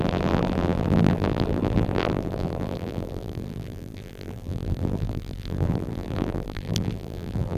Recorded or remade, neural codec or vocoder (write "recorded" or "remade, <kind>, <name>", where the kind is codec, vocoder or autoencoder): remade, vocoder, BigVGAN v2